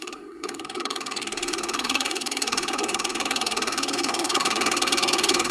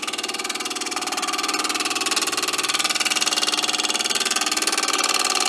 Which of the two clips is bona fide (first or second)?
second